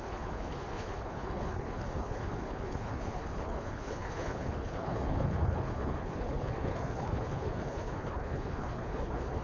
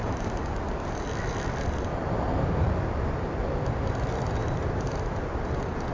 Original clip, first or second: second